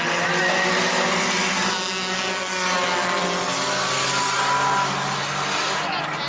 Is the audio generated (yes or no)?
no